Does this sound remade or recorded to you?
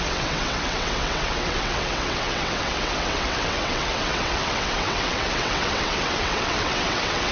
remade